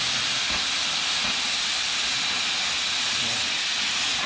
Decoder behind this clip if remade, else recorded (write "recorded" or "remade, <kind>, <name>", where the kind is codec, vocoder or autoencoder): recorded